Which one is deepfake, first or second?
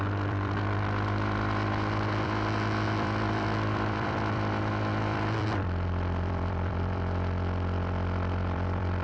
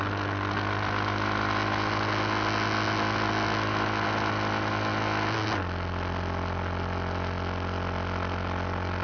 first